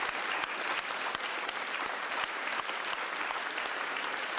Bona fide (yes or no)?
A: yes